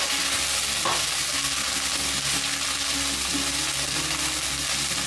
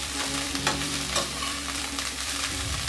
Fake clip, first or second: second